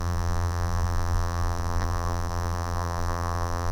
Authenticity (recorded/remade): remade